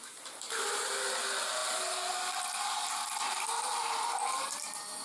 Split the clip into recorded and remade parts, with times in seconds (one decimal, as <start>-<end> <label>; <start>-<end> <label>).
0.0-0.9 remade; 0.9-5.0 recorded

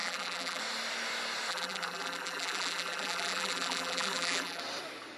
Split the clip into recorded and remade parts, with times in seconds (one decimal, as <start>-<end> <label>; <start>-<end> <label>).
0.0-0.6 remade; 0.6-1.5 recorded; 1.5-4.6 remade; 4.6-5.2 recorded

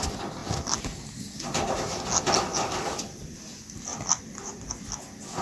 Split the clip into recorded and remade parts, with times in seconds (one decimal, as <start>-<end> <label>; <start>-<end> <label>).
0.0-2.5 recorded; 2.5-3.3 remade; 3.3-3.9 recorded; 3.9-4.8 remade; 4.8-5.4 recorded